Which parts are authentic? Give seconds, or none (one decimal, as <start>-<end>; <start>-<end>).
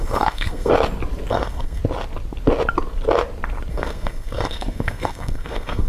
0.7-1.3; 1.8-3.7